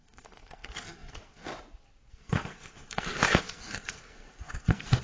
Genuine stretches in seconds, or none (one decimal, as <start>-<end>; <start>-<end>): 1.5-2.1